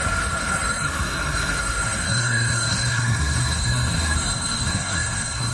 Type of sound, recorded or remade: remade